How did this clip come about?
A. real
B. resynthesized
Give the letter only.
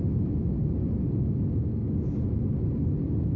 A